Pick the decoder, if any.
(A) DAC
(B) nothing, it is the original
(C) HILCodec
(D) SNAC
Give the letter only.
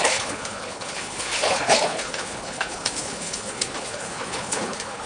C